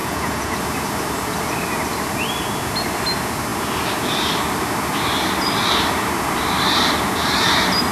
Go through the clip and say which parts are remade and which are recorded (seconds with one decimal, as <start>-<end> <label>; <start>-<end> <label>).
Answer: 0.0-0.6 remade; 0.6-7.9 recorded